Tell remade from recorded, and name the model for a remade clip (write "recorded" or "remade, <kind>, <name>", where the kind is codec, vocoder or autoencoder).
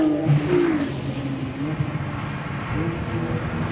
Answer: recorded